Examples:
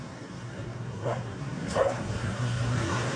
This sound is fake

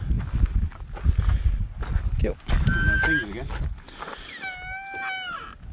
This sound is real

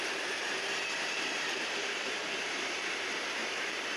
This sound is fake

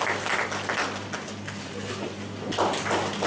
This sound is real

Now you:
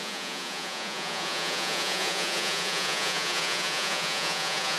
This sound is fake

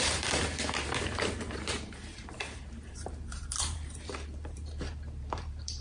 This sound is fake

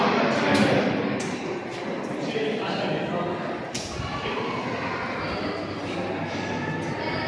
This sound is real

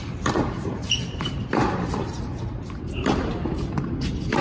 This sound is fake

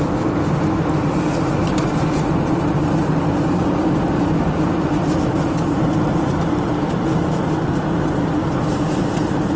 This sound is real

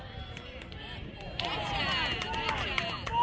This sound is real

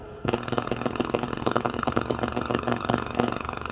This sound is fake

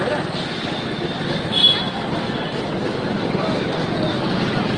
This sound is real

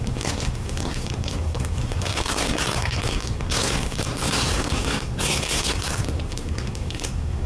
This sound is fake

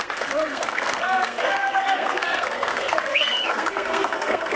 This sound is fake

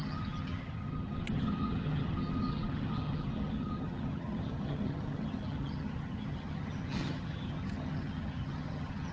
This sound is fake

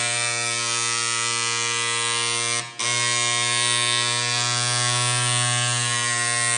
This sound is real